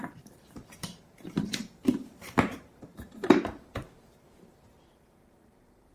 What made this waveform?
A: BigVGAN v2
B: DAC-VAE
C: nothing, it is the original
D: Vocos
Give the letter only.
A